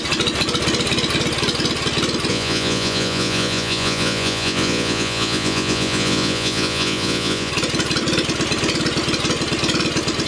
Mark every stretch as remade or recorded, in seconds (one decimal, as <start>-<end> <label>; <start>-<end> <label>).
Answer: 0.0-2.3 recorded; 2.3-7.5 remade; 7.5-10.3 recorded